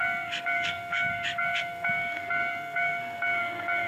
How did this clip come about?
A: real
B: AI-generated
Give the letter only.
B